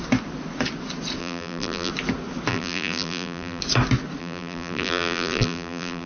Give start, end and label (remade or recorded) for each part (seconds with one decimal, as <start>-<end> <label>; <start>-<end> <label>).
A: 0.0-1.2 recorded; 1.2-1.9 remade; 1.9-2.5 recorded; 2.5-3.6 remade; 3.6-4.2 recorded; 4.2-6.1 remade

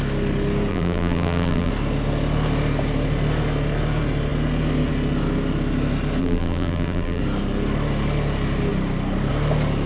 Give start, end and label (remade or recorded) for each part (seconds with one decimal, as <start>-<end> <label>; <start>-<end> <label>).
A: 0.0-0.7 recorded; 0.7-1.7 remade; 1.7-6.2 recorded; 6.2-7.2 remade; 7.2-9.9 recorded

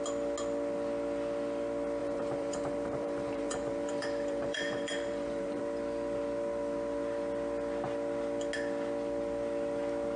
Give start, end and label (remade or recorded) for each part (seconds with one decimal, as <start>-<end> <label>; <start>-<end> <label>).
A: 0.0-2.0 recorded; 2.0-5.6 remade; 5.6-10.2 recorded

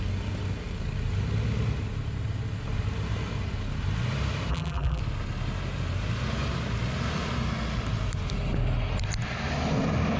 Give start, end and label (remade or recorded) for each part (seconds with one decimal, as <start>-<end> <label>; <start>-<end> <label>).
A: 0.0-4.5 recorded; 4.5-5.0 remade; 5.0-10.2 recorded

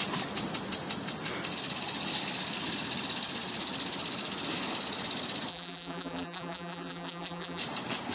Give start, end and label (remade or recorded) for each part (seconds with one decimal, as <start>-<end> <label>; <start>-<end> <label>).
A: 0.0-5.5 recorded; 5.5-7.6 remade; 7.6-8.1 recorded

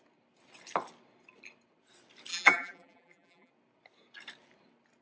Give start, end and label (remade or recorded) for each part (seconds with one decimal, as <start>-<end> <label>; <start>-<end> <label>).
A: 0.0-2.3 recorded; 2.3-3.5 remade; 3.5-5.0 recorded

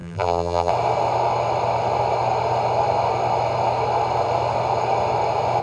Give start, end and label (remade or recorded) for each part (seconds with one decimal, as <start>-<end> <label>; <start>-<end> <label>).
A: 0.0-0.7 remade; 0.7-5.6 recorded

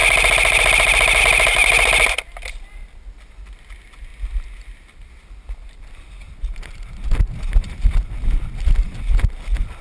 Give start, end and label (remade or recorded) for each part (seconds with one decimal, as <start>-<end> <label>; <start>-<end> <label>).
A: 0.0-1.2 remade; 1.2-4.1 recorded; 4.1-6.1 remade; 6.1-9.8 recorded